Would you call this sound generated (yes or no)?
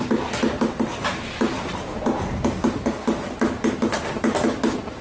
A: no